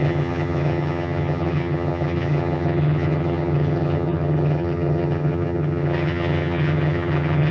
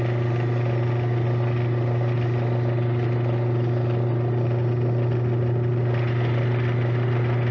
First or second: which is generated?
first